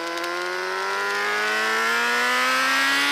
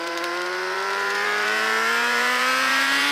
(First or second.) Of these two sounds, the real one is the first